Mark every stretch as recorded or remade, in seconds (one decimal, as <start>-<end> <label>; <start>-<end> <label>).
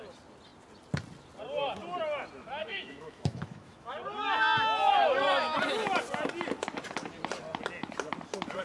0.0-2.6 recorded; 2.6-3.9 remade; 3.9-8.6 recorded